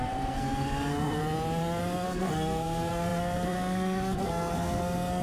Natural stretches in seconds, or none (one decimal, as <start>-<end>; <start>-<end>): 1.2-1.8